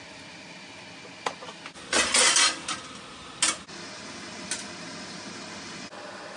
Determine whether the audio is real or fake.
real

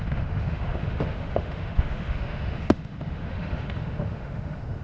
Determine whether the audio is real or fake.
fake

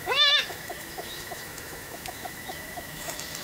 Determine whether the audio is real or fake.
fake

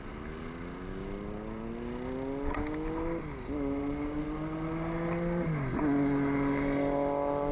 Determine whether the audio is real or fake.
real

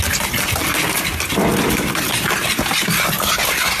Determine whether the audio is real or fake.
real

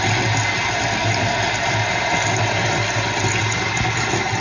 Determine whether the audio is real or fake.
real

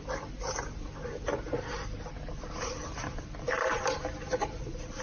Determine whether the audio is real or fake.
real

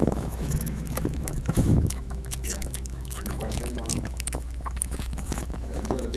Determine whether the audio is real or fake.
fake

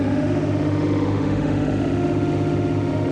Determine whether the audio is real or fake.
fake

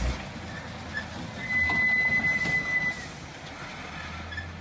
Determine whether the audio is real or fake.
real